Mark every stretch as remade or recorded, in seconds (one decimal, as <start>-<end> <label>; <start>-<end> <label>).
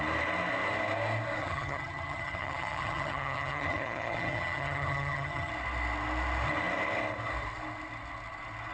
0.0-1.4 recorded; 1.4-5.5 remade; 5.5-8.7 recorded